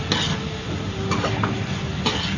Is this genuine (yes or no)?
yes